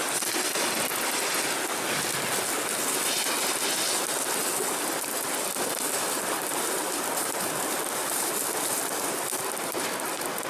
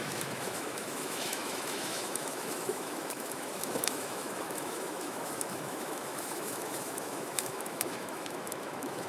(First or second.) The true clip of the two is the first